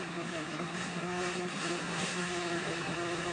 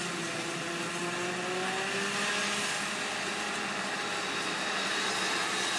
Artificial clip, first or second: first